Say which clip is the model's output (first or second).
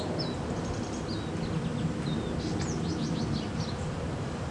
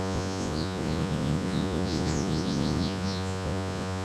second